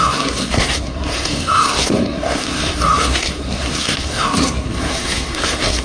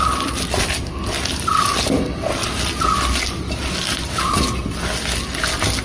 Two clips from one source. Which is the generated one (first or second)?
first